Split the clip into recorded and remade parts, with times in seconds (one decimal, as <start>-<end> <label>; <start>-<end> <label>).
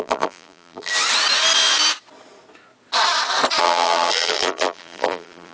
0.0-0.9 remade; 0.9-3.6 recorded; 3.6-5.5 remade